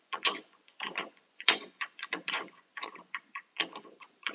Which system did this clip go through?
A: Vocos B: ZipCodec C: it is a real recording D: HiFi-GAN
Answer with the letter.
A